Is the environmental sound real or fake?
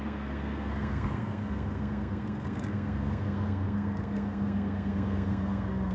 fake